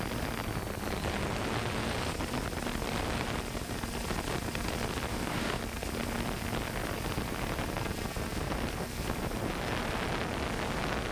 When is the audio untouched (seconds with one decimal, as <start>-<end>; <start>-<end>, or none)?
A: 0.0-5.1; 5.6-11.1